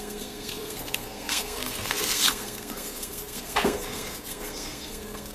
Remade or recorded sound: remade